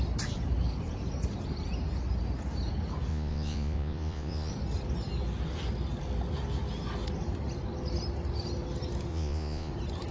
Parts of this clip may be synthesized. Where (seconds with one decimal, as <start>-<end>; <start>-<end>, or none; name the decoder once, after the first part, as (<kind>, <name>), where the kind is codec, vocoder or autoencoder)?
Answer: 3.1-4.5 (vocoder, Vocos); 9.1-9.7